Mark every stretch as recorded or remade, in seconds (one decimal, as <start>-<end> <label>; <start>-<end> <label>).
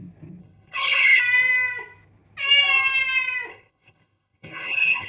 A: 0.0-0.4 recorded; 0.4-1.2 remade; 1.2-3.5 recorded; 3.5-5.1 remade